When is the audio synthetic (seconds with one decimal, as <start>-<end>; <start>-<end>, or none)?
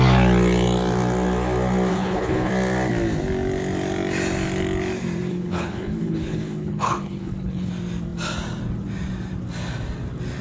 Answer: 1.9-2.5; 5.3-7.7